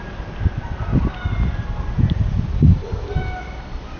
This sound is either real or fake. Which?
real